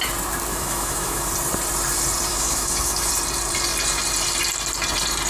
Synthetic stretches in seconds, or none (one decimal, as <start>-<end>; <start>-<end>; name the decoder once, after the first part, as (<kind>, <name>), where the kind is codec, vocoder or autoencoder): 0.5-1.3 (autoencoder, DAC-VAE); 2.3-3.1